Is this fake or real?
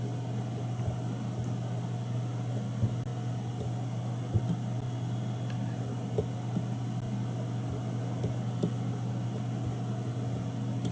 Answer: real